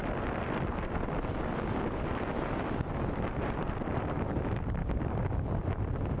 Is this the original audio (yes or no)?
no